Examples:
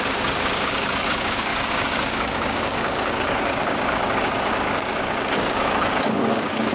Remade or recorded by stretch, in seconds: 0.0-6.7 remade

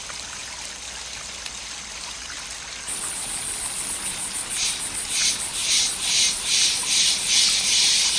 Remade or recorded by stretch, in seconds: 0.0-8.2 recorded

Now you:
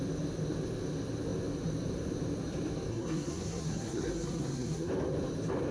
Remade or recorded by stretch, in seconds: 0.0-2.9 recorded; 2.9-4.9 remade; 4.9-5.7 recorded